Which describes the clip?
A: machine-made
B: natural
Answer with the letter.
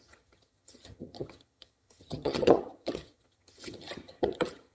A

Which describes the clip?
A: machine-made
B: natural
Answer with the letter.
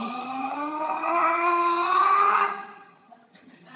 A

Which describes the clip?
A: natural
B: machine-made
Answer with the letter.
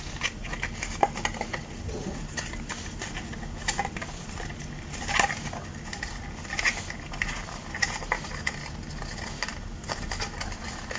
A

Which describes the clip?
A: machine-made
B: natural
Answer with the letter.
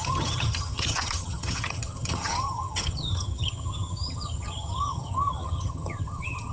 A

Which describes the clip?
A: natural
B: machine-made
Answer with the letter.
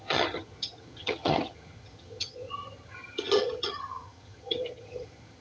B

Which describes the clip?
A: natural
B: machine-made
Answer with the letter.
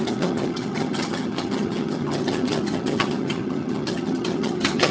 B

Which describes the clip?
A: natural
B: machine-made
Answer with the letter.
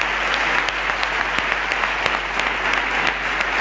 A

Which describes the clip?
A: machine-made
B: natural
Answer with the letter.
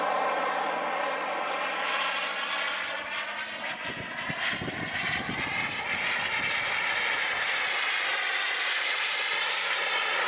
B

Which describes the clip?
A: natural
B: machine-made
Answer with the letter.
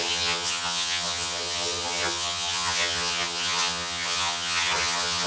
B